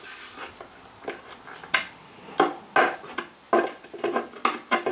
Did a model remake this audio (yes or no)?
no